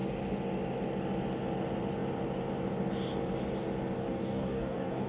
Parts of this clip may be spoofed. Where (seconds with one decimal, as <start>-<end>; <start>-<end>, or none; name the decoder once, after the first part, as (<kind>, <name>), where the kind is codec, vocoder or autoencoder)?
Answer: 4.0-5.1 (codec, DAC)